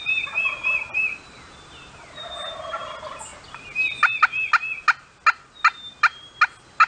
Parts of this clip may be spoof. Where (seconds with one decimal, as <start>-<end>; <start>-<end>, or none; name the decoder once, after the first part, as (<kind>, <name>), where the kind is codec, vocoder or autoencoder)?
none